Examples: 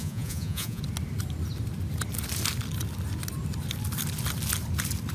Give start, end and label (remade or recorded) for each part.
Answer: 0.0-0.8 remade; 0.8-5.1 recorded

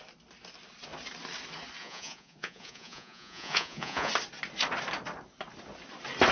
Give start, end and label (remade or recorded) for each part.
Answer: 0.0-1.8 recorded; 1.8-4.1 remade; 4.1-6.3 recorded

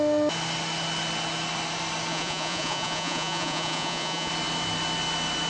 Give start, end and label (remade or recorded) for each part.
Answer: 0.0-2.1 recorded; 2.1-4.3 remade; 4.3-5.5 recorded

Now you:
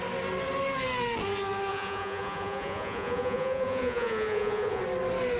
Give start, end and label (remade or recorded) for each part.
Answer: 0.0-1.7 recorded; 1.7-4.8 remade; 4.8-5.4 recorded

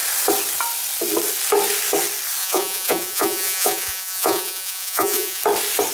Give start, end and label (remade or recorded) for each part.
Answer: 0.0-2.4 recorded; 2.4-5.4 remade; 5.4-5.9 recorded

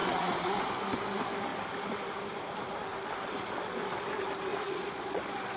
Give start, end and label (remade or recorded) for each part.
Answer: 0.0-0.7 remade; 0.7-4.5 recorded; 4.5-5.6 remade